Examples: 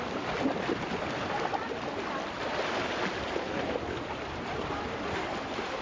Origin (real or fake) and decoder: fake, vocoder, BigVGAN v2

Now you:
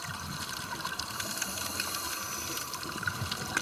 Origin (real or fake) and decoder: fake, vocoder, BigVGAN v2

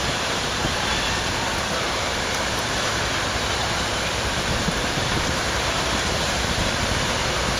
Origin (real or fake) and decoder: fake, vocoder, BigVGAN v2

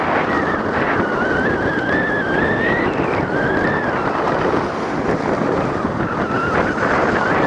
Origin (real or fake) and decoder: real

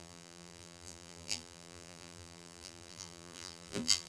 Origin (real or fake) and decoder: fake, vocoder, BigVGAN v2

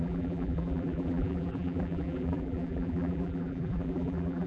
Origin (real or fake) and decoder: fake, vocoder, BigVGAN v2